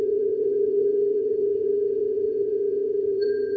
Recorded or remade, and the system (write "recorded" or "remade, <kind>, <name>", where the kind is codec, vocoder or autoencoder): remade, vocoder, HiFi-GAN